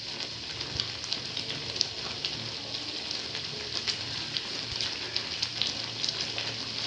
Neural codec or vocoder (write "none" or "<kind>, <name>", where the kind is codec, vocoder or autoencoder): none